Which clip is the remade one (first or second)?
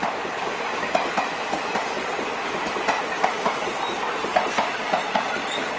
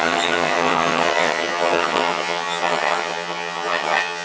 second